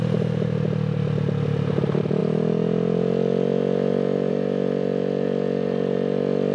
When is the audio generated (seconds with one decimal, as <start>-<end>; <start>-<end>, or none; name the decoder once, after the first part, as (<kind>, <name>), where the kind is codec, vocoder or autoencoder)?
none